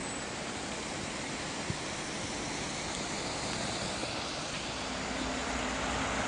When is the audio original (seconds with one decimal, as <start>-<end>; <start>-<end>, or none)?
0.0-6.3